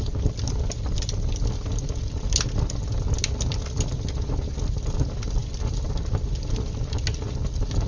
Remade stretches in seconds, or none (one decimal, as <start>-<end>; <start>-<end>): none